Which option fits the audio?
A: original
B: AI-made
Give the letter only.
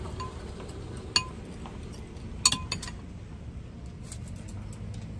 A